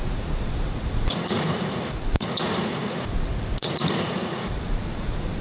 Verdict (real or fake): fake